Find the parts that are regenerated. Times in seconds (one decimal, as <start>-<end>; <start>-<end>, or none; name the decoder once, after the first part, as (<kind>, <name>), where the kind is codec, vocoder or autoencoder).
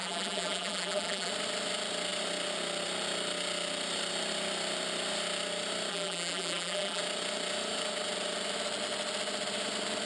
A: 0.0-1.3 (vocoder, BigVGAN v2); 5.9-7.0